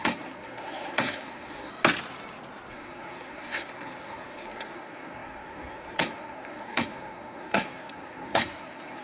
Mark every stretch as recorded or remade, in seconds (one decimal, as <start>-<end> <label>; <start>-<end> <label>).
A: 0.0-1.7 remade; 1.7-2.7 recorded; 2.7-9.0 remade